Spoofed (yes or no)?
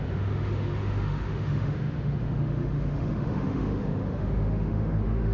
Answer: yes